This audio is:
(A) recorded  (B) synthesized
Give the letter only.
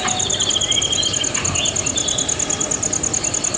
A